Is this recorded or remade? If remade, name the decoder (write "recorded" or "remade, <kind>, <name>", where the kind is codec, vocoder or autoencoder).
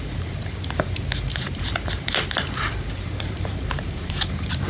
remade, vocoder, BigVGAN v2